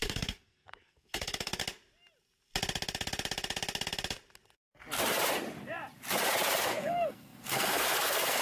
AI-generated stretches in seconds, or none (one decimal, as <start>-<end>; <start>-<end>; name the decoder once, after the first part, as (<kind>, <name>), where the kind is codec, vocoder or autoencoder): 0.0-1.6 (codec, SNAC); 6.6-8.4